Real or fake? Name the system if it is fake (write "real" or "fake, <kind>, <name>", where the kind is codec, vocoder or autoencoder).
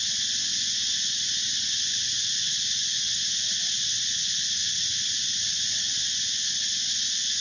fake, vocoder, Vocos